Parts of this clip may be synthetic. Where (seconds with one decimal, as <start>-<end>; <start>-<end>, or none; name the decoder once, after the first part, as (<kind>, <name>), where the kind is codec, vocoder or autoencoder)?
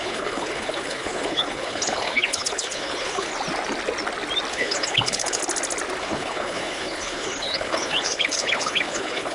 0.0-3.3 (codec, HILCodec); 4.5-5.4; 6.0-9.3